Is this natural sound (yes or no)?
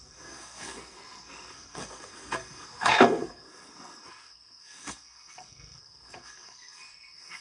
no